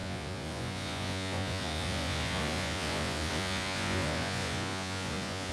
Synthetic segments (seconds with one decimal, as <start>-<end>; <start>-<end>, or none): 0.0-5.5